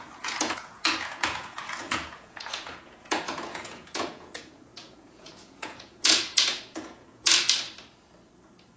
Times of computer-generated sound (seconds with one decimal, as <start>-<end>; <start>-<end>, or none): 0.0-7.3

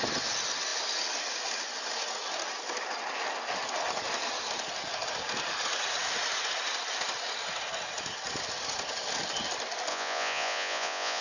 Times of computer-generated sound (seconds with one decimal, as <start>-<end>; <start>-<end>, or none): 9.9-11.2

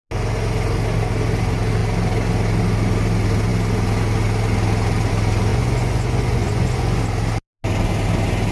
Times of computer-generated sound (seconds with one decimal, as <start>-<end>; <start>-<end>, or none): 5.5-7.0

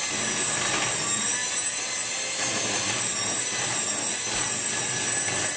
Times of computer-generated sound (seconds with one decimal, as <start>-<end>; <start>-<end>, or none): none

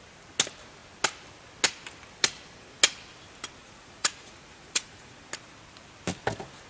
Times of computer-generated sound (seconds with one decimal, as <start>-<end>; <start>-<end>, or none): 3.6-5.2

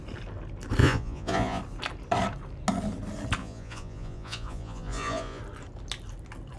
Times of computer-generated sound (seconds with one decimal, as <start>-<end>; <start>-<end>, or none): 0.8-1.6; 3.4-5.4